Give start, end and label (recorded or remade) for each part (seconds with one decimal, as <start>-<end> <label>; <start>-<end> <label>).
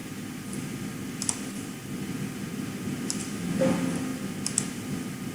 0.0-5.3 recorded